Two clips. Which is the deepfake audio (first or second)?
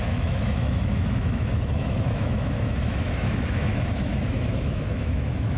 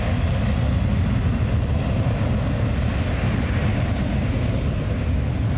first